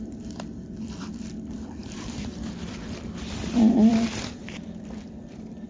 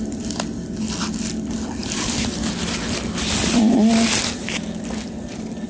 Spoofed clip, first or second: first